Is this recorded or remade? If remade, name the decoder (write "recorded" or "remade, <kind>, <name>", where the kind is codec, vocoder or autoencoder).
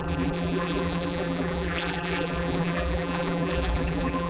remade, vocoder, BigVGAN v2